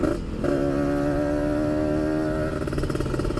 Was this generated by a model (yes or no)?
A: no